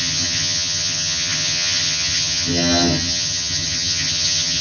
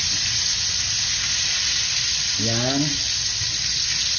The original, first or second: second